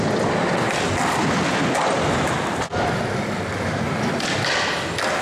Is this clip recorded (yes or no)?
yes